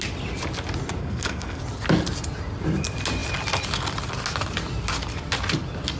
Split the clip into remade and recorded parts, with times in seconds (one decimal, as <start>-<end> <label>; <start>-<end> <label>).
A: 0.0-1.0 recorded; 1.0-1.6 remade; 1.6-6.0 recorded